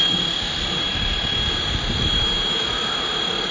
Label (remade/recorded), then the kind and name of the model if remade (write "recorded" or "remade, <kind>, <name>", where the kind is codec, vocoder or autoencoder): recorded